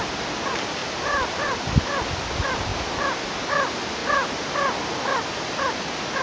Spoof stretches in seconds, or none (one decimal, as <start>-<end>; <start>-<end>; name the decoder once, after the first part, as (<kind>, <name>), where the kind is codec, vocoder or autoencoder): none